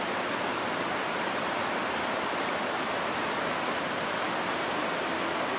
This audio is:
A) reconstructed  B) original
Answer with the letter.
B